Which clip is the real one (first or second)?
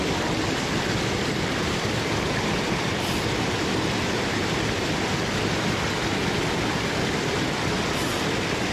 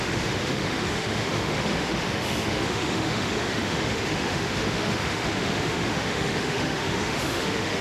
first